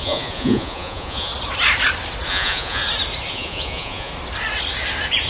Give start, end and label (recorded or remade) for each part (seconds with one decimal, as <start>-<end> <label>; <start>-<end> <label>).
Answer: 0.0-1.3 remade; 1.3-2.3 recorded; 2.3-2.8 remade; 2.8-3.3 recorded; 3.3-4.1 remade; 4.1-5.3 recorded